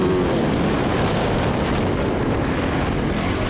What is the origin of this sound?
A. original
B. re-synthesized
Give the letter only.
A